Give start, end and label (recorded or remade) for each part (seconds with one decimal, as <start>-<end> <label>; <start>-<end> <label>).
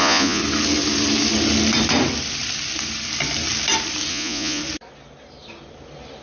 0.0-0.4 remade; 0.4-4.1 recorded; 4.1-4.6 remade; 4.6-6.2 recorded